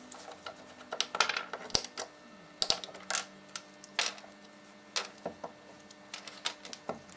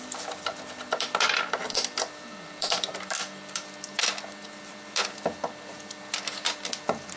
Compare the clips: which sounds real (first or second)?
first